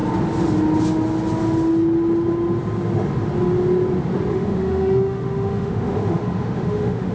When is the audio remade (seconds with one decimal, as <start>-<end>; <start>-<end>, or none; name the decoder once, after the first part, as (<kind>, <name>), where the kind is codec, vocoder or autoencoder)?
4.3-7.1 (autoencoder, DAC-VAE)